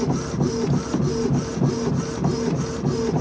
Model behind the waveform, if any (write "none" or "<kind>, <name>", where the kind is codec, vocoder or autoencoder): none